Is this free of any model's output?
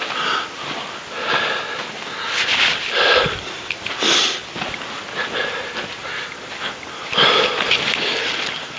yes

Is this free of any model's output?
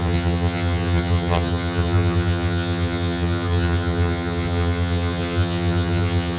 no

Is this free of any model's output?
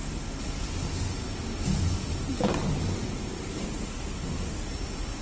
yes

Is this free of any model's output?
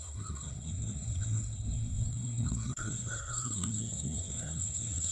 no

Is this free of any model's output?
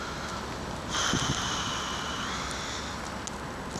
yes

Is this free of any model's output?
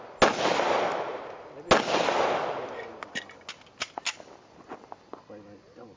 yes